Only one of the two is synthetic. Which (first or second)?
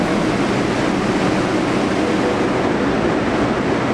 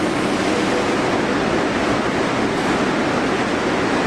second